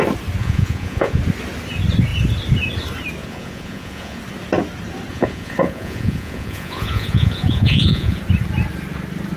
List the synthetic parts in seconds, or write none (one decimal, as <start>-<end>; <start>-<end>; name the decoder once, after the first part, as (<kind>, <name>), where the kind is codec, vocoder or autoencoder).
0.4-1.2 (vocoder, Vocos); 3.2-4.2; 5.1-8.2